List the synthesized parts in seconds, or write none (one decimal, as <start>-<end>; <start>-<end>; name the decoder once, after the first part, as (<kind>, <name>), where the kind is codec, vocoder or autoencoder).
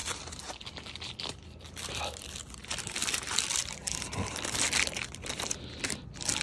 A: 0.0-6.4 (vocoder, BigVGAN v2)